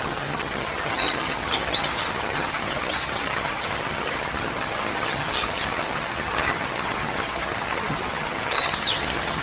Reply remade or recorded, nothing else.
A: remade